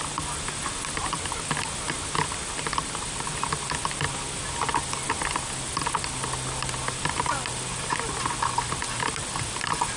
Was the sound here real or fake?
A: real